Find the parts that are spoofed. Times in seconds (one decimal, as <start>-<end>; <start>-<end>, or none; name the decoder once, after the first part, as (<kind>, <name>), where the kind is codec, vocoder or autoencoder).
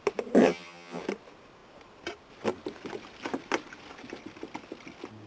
0.4-1.0 (vocoder, HiFi-GAN)